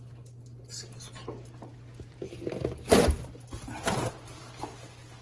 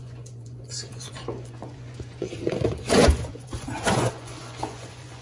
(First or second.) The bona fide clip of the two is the first